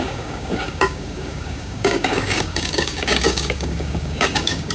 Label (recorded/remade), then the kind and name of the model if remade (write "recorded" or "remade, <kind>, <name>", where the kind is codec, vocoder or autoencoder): remade, codec, DAC